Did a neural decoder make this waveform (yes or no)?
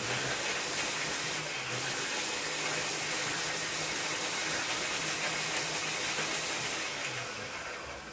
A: no